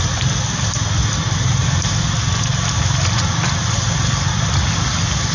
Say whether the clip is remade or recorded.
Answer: recorded